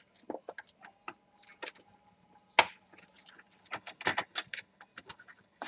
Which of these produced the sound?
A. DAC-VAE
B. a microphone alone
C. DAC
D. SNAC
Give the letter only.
B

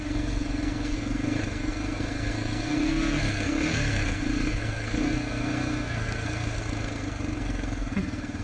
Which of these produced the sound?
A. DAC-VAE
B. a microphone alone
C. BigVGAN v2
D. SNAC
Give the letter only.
D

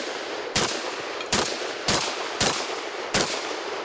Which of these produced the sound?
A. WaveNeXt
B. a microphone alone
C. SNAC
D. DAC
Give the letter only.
B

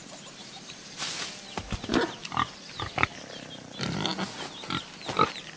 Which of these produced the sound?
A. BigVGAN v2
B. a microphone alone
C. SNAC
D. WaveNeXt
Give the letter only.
B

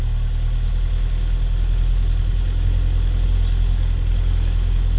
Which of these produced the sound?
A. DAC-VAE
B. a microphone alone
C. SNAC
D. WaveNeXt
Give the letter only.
B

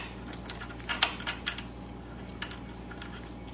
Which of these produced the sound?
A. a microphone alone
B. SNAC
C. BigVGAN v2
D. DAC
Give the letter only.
A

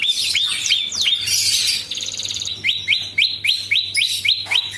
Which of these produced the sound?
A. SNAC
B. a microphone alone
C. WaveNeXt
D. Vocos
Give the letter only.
B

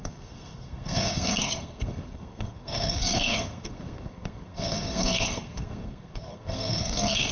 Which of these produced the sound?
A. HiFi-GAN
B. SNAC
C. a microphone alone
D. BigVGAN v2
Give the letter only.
B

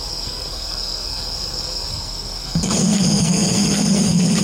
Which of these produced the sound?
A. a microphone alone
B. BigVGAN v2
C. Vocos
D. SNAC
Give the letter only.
D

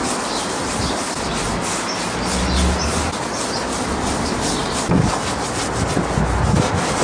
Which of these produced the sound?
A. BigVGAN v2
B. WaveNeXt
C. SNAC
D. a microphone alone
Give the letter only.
D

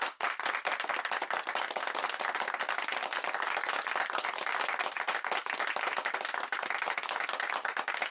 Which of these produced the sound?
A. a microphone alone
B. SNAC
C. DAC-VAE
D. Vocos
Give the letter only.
A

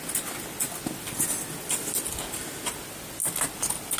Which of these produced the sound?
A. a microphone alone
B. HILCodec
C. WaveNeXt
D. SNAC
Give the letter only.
A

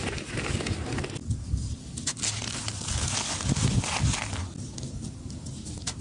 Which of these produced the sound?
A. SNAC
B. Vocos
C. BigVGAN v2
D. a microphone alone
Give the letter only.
D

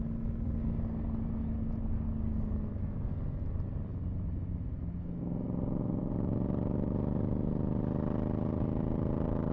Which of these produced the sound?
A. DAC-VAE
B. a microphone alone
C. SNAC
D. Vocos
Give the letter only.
B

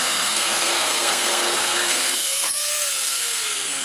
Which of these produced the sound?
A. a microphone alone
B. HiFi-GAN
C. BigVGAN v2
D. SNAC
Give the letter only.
D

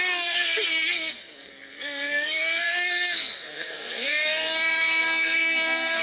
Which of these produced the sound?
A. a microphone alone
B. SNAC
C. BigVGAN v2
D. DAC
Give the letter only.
B